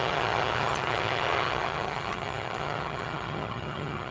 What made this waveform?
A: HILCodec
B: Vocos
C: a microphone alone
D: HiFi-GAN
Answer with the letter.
D